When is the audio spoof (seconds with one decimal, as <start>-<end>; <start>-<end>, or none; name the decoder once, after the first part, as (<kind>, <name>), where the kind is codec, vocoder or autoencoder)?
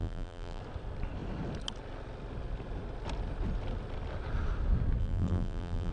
0.0-0.6 (vocoder, BigVGAN v2); 5.0-5.9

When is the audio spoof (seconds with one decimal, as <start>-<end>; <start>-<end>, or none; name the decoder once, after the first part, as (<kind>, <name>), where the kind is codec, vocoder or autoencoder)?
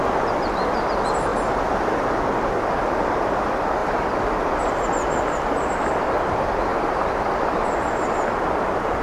none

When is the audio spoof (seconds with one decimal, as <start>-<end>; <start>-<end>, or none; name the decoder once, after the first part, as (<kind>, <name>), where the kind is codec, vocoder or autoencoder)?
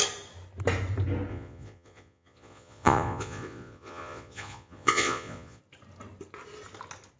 1.3-5.6 (vocoder, Vocos)